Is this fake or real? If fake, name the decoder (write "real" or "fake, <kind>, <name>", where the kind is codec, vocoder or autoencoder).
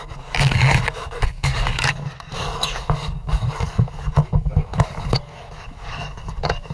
fake, codec, DAC